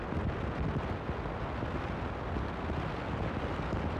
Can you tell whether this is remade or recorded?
recorded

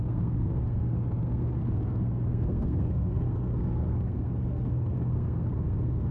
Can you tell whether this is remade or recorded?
remade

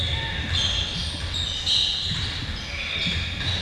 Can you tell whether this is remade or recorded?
recorded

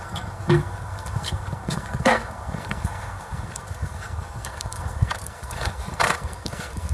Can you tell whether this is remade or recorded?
remade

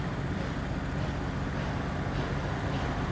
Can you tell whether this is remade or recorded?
recorded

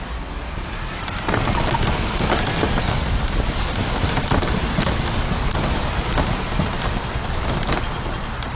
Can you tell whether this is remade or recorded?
recorded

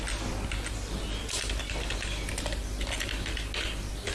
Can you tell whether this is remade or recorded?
recorded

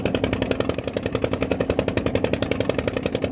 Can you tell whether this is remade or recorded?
recorded